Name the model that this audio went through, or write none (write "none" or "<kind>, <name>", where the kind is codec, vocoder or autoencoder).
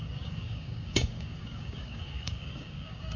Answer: codec, DAC